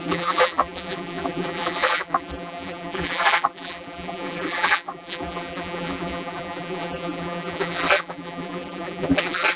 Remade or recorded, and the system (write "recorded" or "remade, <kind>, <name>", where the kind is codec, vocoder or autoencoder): remade, vocoder, BigVGAN v2